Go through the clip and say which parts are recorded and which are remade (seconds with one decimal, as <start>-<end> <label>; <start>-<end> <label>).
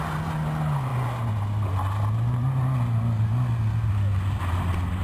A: 0.0-5.0 recorded